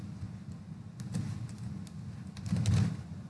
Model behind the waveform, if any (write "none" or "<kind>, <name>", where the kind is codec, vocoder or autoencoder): none